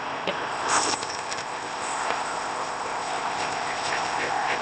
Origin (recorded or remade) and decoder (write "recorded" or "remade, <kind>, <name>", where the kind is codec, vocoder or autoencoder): remade, codec, ZipCodec